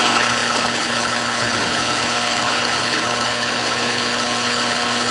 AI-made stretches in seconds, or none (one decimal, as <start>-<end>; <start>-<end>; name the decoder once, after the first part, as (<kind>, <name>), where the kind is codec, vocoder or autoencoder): 0.0-5.1 (codec, HILCodec)